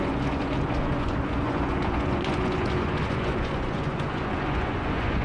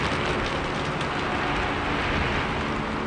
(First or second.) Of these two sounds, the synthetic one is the first